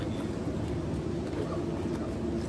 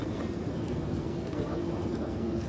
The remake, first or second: second